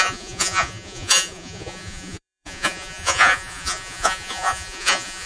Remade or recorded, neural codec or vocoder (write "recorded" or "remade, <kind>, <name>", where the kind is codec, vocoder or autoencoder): remade, vocoder, Vocos